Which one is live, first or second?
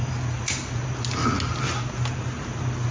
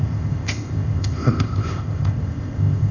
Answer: first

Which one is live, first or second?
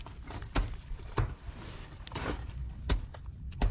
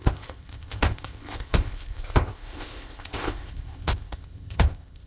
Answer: first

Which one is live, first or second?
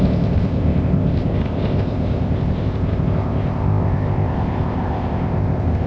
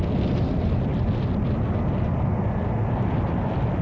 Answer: second